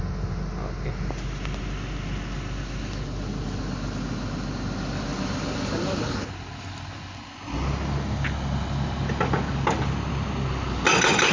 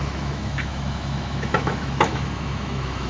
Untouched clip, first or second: first